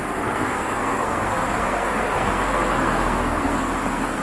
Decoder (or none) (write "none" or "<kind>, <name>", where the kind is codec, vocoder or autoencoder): codec, SNAC